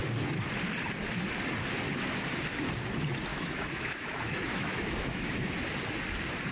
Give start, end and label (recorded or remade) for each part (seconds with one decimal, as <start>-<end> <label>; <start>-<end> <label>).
0.0-3.3 recorded; 3.3-5.5 remade; 5.5-6.5 recorded